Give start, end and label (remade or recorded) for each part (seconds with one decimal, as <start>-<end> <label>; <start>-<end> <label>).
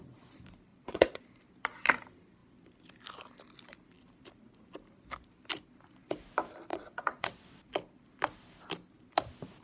0.0-0.7 recorded; 0.7-1.2 remade; 1.2-6.7 recorded; 6.7-7.6 remade; 7.6-9.6 recorded